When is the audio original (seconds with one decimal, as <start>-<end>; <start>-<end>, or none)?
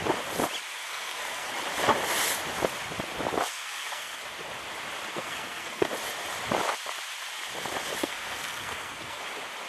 0.0-0.8; 1.5-3.5; 4.2-5.1; 5.9-8.0; 9.2-9.7